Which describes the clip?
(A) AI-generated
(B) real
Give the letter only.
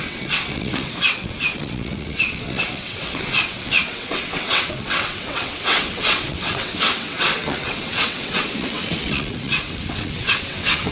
A